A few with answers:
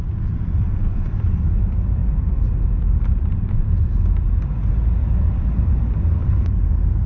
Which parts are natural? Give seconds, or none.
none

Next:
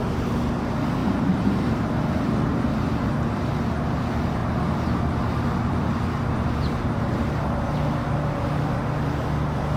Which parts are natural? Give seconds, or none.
0.0-1.0; 3.5-4.4; 5.0-9.8

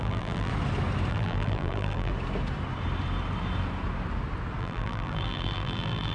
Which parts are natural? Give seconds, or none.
0.5-1.1; 2.1-4.6

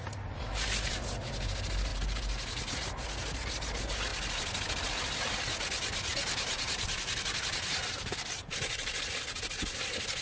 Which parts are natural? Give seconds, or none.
0.0-1.9; 2.7-6.1; 8.9-10.2

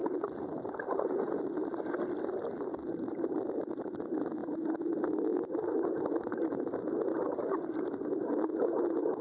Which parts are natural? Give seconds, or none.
4.0-9.2